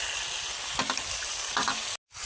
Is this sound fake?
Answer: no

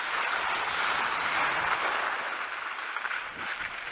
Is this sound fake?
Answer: no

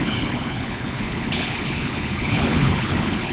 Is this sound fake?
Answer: yes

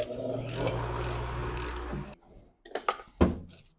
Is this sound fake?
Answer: no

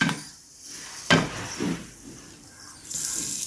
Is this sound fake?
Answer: no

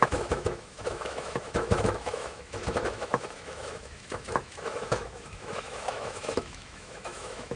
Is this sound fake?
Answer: yes